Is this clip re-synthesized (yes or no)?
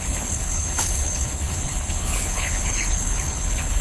yes